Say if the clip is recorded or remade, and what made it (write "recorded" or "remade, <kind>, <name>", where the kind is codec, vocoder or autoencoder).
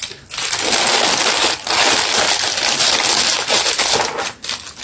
recorded